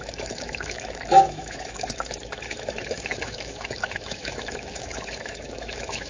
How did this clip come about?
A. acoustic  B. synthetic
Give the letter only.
B